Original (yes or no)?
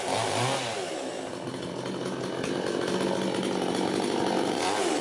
yes